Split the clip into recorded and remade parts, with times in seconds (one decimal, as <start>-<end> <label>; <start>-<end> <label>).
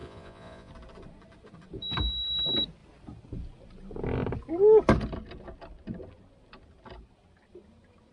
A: 0.0-0.7 remade; 0.7-8.1 recorded